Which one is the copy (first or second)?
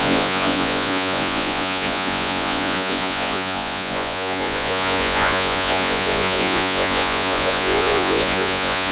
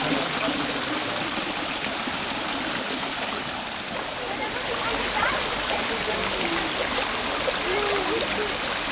first